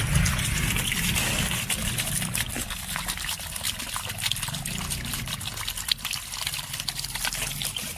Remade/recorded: recorded